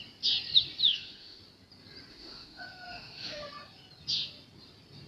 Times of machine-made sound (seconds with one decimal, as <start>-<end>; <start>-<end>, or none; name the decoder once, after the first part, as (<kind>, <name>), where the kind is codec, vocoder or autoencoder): 0.9-1.4 (autoencoder, DAC-VAE); 2.1-3.4